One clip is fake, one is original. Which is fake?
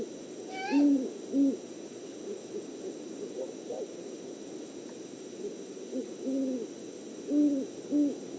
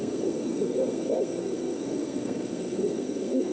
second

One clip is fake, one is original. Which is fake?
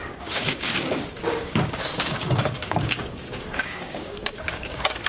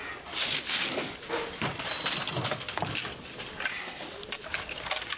first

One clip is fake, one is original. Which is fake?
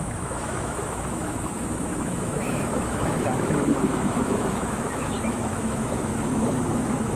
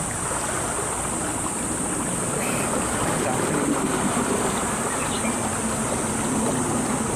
first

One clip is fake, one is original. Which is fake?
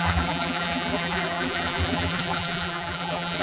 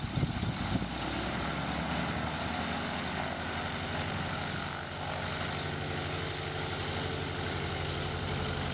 first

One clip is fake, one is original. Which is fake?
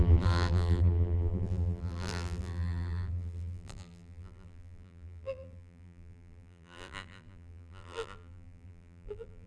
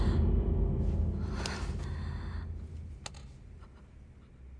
first